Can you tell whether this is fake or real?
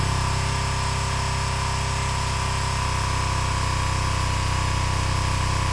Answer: real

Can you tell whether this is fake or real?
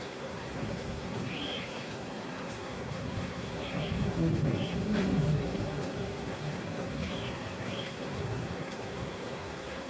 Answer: fake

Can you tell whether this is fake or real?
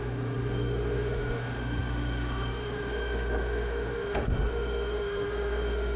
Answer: fake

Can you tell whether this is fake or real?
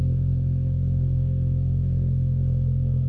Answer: fake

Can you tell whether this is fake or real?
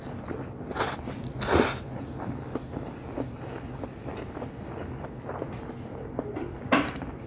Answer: real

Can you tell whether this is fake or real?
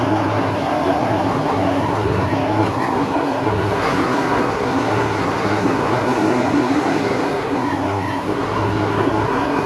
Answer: fake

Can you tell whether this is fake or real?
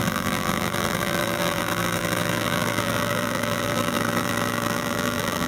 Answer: fake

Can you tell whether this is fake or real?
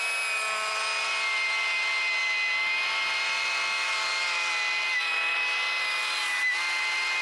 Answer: real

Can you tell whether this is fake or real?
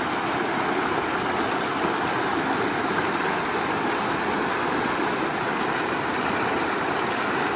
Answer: real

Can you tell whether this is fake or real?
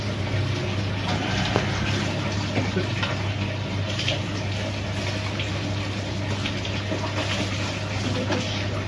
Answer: real